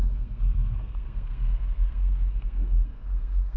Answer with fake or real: fake